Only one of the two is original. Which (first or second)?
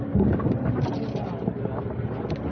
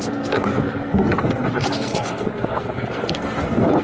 first